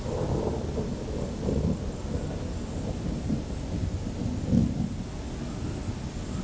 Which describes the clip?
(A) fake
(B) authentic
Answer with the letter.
B